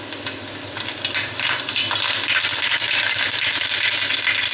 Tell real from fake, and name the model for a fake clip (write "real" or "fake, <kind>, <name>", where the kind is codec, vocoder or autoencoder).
real